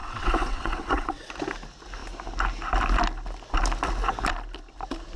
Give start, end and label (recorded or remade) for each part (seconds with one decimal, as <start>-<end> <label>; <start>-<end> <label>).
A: 0.0-1.3 remade; 1.3-5.2 recorded